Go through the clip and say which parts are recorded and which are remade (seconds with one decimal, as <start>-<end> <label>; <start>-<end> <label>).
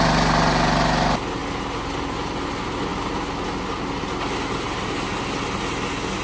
0.0-6.2 recorded